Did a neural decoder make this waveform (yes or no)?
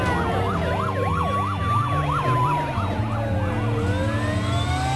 no